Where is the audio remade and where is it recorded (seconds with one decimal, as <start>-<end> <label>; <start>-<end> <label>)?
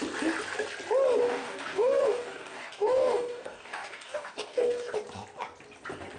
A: 0.0-1.2 recorded; 1.2-4.9 remade; 4.9-6.2 recorded